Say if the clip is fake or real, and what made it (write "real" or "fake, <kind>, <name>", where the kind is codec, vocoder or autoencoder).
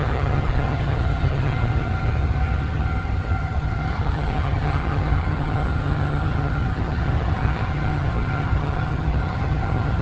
fake, vocoder, HiFi-GAN